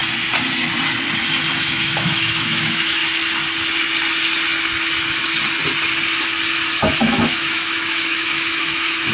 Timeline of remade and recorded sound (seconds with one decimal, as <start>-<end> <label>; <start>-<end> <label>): 0.0-1.6 recorded; 1.6-3.0 remade; 3.0-6.8 recorded; 6.8-9.1 remade